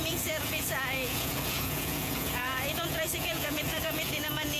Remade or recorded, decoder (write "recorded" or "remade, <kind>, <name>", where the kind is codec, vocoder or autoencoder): remade, vocoder, Vocos